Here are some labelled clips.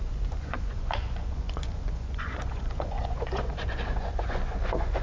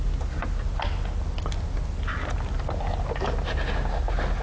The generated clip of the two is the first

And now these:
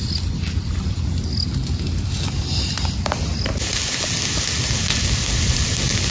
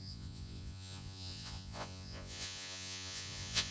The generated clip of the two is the second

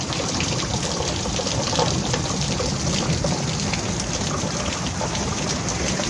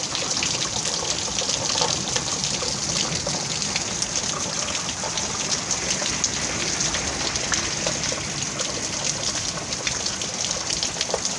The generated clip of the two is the first